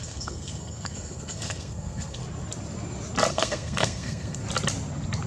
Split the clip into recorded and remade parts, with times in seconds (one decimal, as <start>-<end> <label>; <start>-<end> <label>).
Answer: 0.0-2.2 remade; 2.2-3.3 recorded; 3.3-4.4 remade; 4.4-5.3 recorded